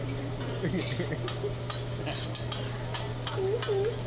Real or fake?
real